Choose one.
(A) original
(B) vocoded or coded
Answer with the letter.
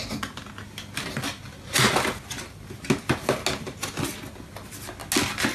A